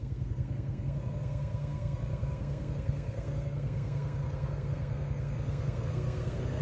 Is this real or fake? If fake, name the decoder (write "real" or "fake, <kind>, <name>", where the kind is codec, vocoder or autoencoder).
fake, codec, SNAC